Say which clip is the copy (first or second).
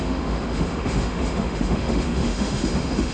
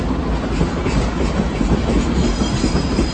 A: first